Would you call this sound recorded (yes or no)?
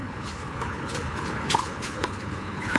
no